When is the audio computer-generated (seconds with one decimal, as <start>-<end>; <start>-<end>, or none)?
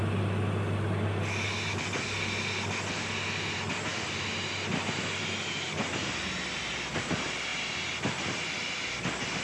none